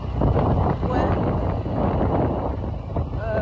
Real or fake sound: real